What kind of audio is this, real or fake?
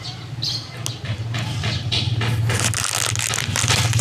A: real